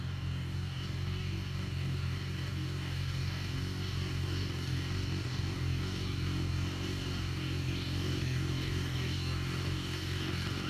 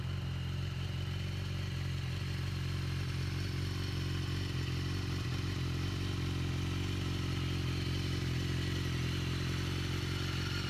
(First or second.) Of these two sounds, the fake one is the first